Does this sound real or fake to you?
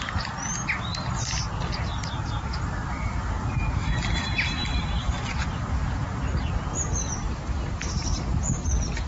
real